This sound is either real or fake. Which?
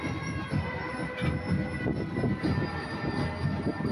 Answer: real